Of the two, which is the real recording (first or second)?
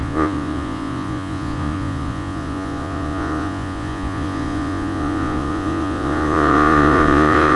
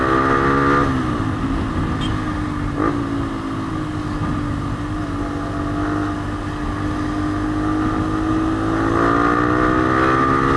second